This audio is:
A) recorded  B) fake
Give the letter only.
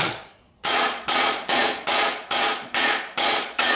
B